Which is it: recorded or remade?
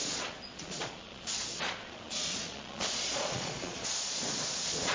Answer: remade